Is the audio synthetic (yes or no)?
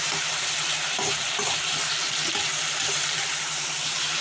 yes